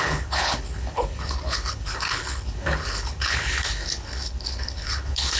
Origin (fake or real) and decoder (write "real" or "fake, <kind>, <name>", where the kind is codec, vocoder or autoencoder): fake, codec, HILCodec